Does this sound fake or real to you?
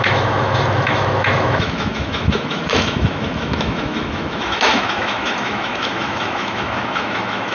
fake